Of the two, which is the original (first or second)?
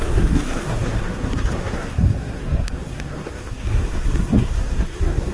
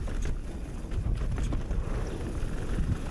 second